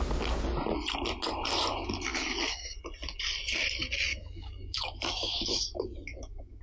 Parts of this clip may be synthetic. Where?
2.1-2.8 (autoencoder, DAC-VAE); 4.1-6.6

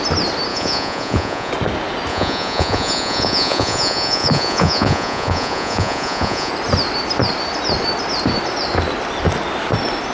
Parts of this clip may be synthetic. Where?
0.5-1.5 (vocoder, Vocos); 2.1-6.5

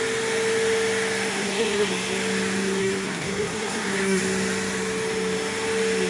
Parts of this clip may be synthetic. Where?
1.3-1.9 (codec, SNAC); 2.8-4.2

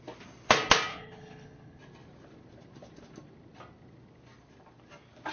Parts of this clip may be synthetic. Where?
0.9-1.8 (codec, HILCodec)

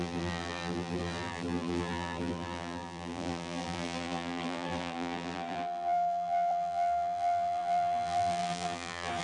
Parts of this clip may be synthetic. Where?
0.0-9.2 (vocoder, BigVGAN v2)

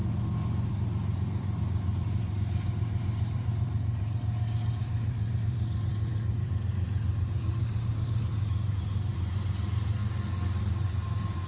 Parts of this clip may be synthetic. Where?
0.7-10.0 (vocoder, BigVGAN v2); 10.6-11.5

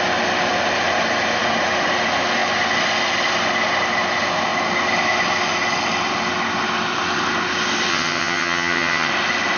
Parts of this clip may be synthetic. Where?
7.9-9.1 (vocoder, HiFi-GAN)

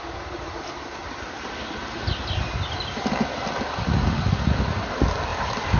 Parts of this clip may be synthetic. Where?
none